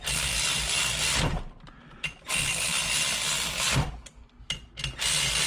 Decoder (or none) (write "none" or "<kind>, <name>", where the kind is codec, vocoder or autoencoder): none